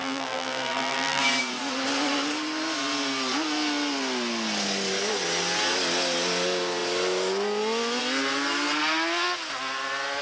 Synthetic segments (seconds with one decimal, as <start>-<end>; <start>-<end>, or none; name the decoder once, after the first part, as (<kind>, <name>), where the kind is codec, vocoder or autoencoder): 0.0-1.2 (vocoder, BigVGAN v2)